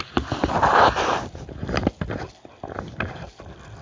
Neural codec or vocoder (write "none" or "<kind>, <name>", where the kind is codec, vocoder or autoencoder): none